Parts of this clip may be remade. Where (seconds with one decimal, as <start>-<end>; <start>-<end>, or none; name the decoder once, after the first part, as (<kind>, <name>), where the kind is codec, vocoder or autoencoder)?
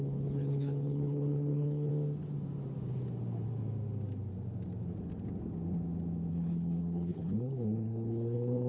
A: 0.0-1.9 (codec, HILCodec); 6.3-8.7